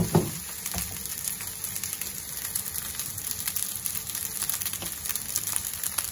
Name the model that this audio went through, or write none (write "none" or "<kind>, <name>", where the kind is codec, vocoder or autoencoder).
none